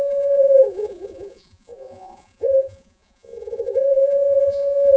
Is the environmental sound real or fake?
fake